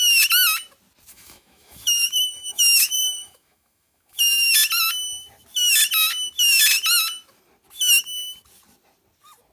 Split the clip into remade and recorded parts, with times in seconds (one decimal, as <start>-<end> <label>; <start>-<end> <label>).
0.0-1.1 recorded; 1.1-4.2 remade; 4.2-9.5 recorded